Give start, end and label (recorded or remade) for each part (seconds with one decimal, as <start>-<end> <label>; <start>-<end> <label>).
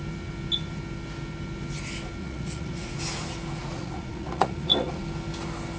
0.0-2.2 recorded; 2.2-3.0 remade; 3.0-3.6 recorded; 3.6-5.0 remade; 5.0-5.8 recorded